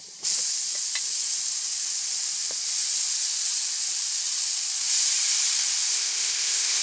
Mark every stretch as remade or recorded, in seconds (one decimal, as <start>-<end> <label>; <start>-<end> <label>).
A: 0.0-5.9 recorded; 5.9-6.8 remade